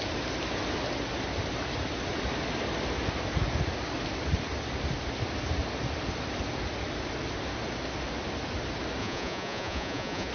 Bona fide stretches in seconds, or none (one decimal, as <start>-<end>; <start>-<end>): 0.0-9.0